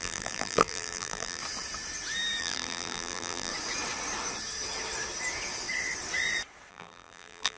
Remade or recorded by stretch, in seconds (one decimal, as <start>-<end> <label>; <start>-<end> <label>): 0.0-1.4 remade; 1.4-2.4 recorded; 2.4-3.5 remade; 3.5-6.7 recorded; 6.7-7.6 remade